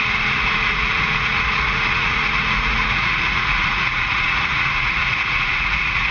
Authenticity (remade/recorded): remade